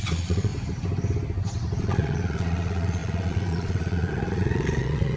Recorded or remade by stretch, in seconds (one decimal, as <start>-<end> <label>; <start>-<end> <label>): 0.0-0.5 remade; 0.5-1.8 recorded; 1.8-5.2 remade